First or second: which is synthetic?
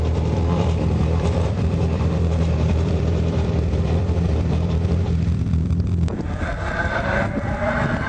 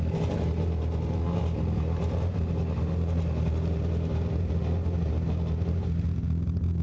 first